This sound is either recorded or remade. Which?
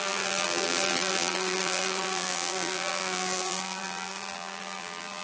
remade